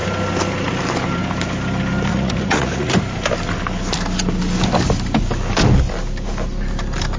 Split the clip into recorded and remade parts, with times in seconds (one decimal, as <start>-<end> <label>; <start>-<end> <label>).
0.0-2.1 recorded; 2.1-2.9 remade; 2.9-7.2 recorded